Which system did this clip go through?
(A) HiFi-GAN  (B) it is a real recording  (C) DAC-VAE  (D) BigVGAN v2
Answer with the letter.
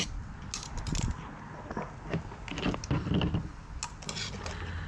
B